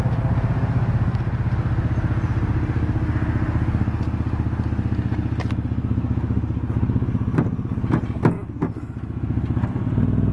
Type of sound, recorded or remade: recorded